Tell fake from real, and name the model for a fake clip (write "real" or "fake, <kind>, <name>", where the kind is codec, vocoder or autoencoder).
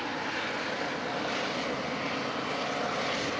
real